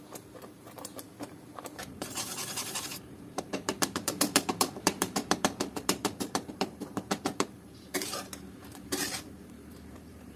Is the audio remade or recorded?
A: remade